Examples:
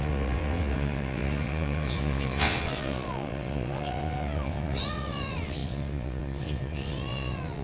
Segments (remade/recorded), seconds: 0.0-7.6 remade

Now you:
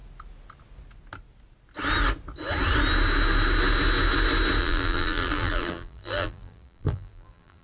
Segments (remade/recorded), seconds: 0.0-4.6 recorded; 4.6-7.6 remade